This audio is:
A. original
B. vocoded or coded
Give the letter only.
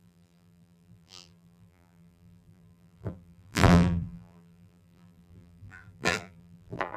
B